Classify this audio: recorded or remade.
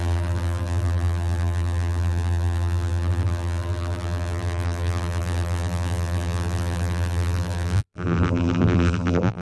remade